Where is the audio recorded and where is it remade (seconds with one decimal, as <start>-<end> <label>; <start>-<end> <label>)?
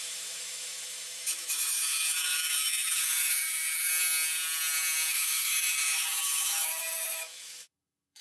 0.0-3.9 remade; 3.9-5.1 recorded; 5.1-8.2 remade